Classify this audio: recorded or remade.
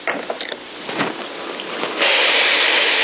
recorded